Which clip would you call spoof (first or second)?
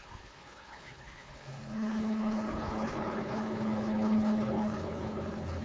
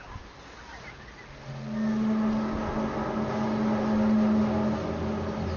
first